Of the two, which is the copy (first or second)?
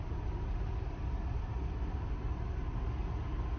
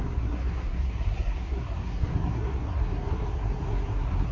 second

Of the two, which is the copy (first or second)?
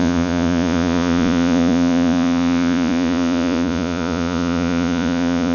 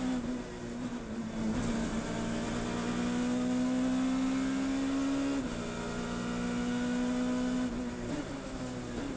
first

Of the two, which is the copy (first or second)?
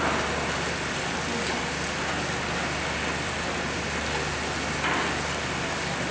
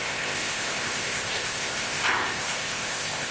second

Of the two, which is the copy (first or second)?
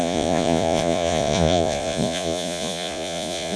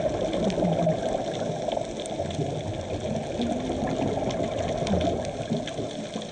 first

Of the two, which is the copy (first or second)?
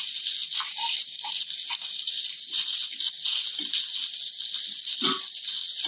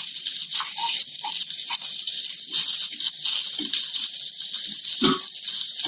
second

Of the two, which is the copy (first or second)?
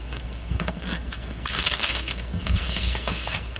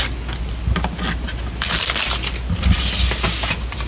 first